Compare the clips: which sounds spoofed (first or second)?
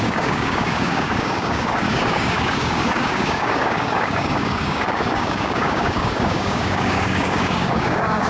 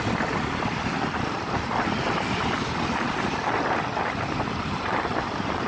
first